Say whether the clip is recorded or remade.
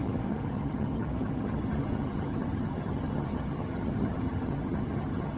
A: remade